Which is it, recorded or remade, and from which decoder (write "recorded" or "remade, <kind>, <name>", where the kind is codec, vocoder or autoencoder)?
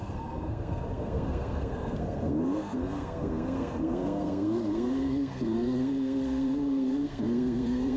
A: remade, codec, SNAC